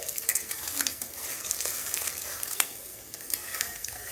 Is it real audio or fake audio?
fake